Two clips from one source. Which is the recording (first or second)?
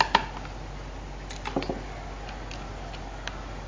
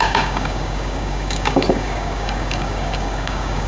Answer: first